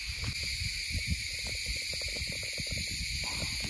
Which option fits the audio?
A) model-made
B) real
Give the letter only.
B